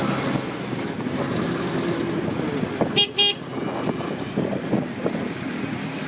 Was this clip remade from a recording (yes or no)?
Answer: no